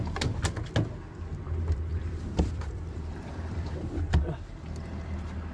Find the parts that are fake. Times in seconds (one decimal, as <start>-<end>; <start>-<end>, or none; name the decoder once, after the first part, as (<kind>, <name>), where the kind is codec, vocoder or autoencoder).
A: 1.9-4.6 (vocoder, BigVGAN v2)